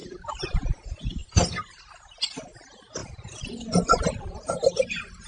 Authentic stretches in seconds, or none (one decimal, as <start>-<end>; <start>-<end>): 0.0-0.5; 3.0-4.2